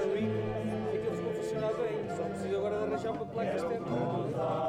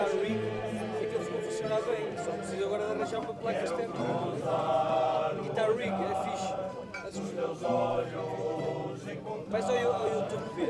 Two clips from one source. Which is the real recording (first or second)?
first